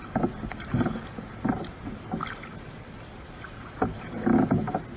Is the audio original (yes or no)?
yes